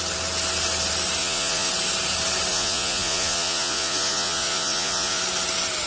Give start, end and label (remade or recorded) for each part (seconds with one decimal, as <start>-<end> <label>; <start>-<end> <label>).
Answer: 0.0-1.2 recorded; 1.2-1.7 remade; 1.7-2.5 recorded; 2.5-5.2 remade; 5.2-5.9 recorded

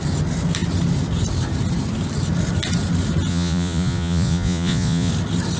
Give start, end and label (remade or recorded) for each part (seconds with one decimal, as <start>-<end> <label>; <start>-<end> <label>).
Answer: 0.0-3.3 recorded; 3.3-5.1 remade; 5.1-5.6 recorded

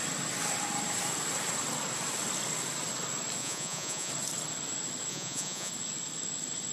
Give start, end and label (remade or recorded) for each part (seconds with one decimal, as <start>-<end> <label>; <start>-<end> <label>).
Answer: 0.0-3.4 recorded; 3.4-4.1 remade; 4.1-5.1 recorded; 5.1-5.7 remade; 5.7-6.7 recorded

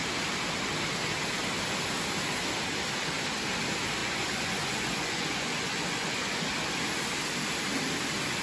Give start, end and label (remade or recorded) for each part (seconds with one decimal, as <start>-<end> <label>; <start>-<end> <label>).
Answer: 0.0-4.0 recorded; 4.0-6.5 remade; 6.5-8.4 recorded

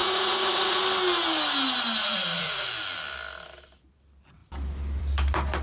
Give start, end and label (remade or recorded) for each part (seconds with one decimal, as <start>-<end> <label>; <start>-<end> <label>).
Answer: 0.0-0.8 remade; 0.8-2.0 recorded; 2.0-2.7 remade; 2.7-5.6 recorded

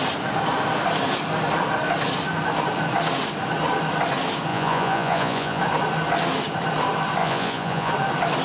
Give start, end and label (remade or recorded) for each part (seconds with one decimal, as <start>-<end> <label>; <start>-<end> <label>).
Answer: 0.0-4.5 recorded; 4.5-5.6 remade; 5.6-7.2 recorded; 7.2-7.9 remade; 7.9-8.4 recorded

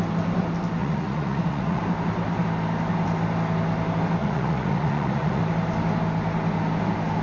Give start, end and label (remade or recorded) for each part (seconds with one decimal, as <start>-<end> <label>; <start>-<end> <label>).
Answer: 0.0-0.8 recorded; 0.8-1.8 remade; 1.8-4.2 recorded; 4.2-5.4 remade; 5.4-7.2 recorded

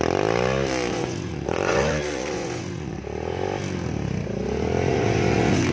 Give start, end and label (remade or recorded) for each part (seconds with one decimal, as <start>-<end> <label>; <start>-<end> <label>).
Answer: 0.0-0.9 recorded; 0.9-3.0 remade; 3.0-4.9 recorded; 4.9-5.7 remade